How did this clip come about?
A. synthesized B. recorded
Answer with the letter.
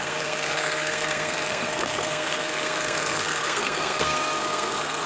A